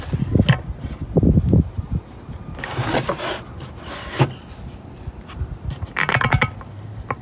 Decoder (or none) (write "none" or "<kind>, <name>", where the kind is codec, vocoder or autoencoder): none